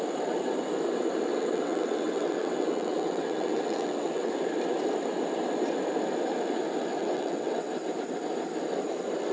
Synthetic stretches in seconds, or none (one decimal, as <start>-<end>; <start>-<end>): 1.3-4.3; 7.0-7.7